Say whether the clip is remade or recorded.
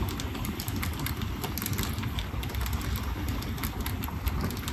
recorded